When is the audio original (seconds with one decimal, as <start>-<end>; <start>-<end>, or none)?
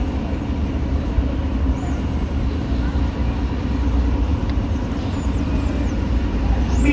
0.0-6.9